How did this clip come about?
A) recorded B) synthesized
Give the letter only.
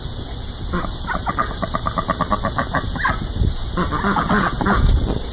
A